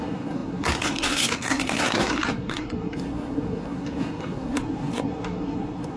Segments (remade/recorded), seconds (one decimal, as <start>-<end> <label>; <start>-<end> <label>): 0.0-6.0 remade